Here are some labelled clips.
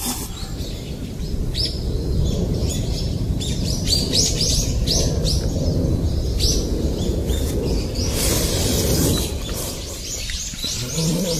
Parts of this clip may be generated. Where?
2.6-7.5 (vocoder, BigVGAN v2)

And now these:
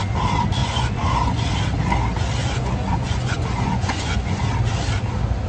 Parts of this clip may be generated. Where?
0.6-1.5 (vocoder, Vocos); 2.4-4.4

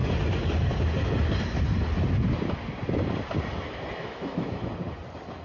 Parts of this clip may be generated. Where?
4.0-4.7 (autoencoder, DAC-VAE)

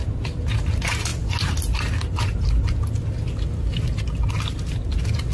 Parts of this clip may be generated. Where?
none

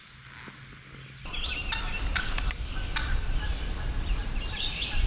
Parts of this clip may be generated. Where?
2.1-2.7 (vocoder, BigVGAN v2); 4.2-5.1

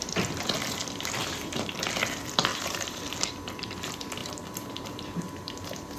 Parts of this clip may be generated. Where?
1.2-1.8 (vocoder, BigVGAN v2); 2.5-3.0; 4.2-6.0

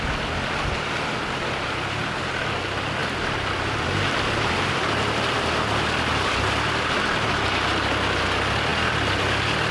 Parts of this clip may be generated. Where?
none